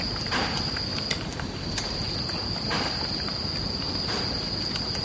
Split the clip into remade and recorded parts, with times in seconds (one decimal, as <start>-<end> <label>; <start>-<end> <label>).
0.0-5.0 recorded